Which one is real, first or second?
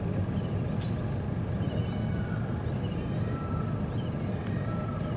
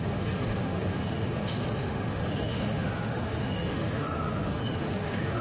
first